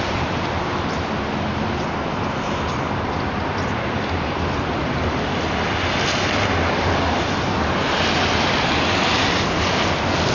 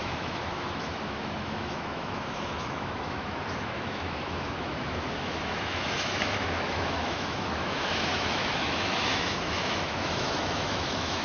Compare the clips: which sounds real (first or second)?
first